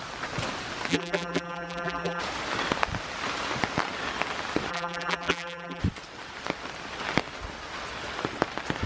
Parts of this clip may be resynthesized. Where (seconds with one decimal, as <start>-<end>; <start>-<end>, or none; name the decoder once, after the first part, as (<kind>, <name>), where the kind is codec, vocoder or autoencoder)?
0.9-2.2 (vocoder, BigVGAN v2); 4.7-5.8